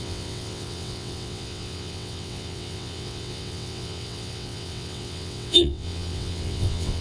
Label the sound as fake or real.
fake